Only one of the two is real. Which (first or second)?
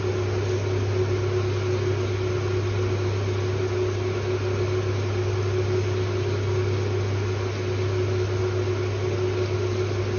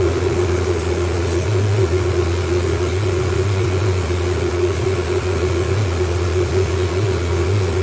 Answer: first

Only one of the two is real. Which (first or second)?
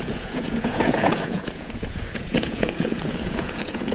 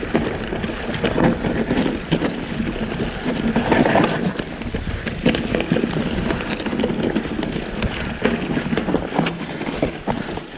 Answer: second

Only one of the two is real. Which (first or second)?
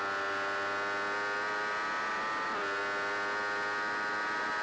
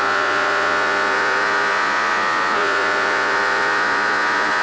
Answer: first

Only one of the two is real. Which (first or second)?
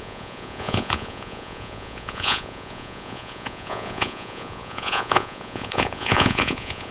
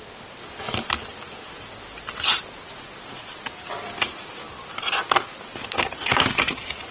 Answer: second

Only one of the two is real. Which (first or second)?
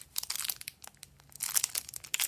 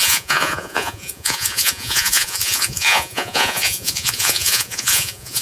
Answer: first